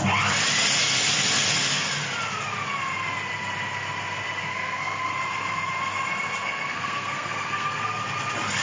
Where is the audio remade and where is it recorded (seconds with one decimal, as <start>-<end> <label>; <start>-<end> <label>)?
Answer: 0.0-4.5 recorded; 4.5-5.1 remade; 5.1-6.4 recorded; 6.4-8.0 remade; 8.0-8.6 recorded